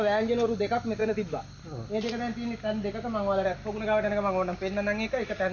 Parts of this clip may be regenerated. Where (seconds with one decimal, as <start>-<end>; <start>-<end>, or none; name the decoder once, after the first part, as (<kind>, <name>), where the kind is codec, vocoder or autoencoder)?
none